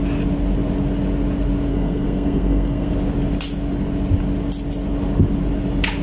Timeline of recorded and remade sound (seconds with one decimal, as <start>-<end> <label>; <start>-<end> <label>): 0.0-1.7 recorded; 1.7-2.9 remade; 2.9-6.0 recorded